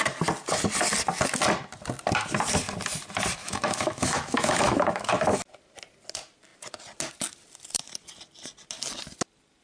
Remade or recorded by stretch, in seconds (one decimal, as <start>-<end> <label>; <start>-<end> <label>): 0.0-3.4 recorded; 3.4-5.1 remade; 5.1-9.6 recorded